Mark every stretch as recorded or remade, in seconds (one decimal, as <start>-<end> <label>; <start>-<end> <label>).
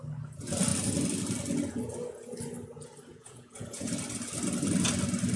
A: 0.0-3.1 recorded; 3.1-3.9 remade; 3.9-5.4 recorded